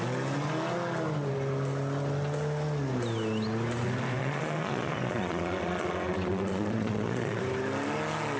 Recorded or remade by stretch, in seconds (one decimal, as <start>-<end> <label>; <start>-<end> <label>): 0.0-4.2 recorded; 4.2-7.4 remade; 7.4-8.4 recorded